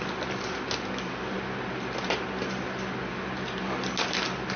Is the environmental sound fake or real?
real